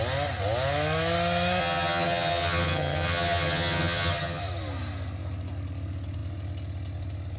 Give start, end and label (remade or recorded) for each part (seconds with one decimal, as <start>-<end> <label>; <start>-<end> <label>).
0.0-1.6 recorded; 1.6-4.4 remade; 4.4-7.4 recorded